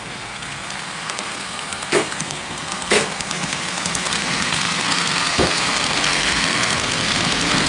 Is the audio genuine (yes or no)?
no